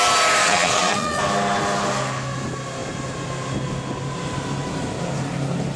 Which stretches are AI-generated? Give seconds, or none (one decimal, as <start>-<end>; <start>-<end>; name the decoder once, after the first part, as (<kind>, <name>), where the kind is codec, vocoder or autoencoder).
0.4-1.2 (vocoder, Vocos)